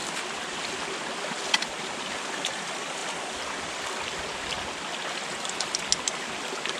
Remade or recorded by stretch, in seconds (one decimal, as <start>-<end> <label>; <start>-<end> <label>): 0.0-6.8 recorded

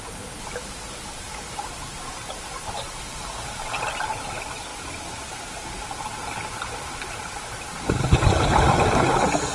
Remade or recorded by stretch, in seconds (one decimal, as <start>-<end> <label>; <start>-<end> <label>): 0.0-9.5 recorded

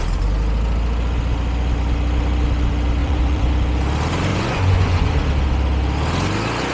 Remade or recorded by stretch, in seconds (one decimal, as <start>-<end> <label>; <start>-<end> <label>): 0.0-3.0 recorded; 3.0-3.5 remade; 3.5-4.3 recorded; 4.3-5.1 remade; 5.1-6.7 recorded

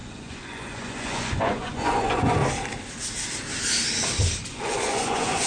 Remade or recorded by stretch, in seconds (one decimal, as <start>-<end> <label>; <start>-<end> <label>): 0.0-2.4 remade; 2.4-4.5 recorded; 4.5-5.5 remade

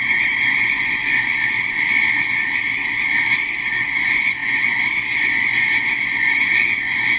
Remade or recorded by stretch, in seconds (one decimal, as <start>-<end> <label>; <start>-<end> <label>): 0.0-1.0 remade; 1.0-3.9 recorded; 3.9-7.2 remade

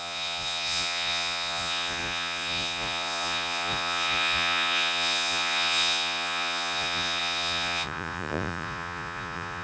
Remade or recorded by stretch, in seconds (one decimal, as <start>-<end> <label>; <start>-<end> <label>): 0.0-9.6 remade